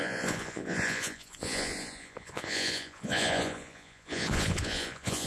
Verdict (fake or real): fake